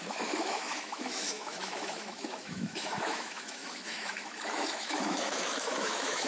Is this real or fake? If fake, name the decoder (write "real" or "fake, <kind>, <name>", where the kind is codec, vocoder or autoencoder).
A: fake, autoencoder, DAC-VAE